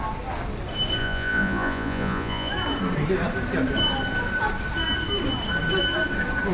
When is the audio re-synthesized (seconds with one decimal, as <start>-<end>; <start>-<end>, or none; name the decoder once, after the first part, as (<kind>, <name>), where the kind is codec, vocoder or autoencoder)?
1.0-2.5 (vocoder, Vocos)